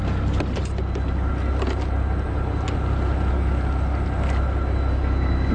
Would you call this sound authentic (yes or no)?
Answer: yes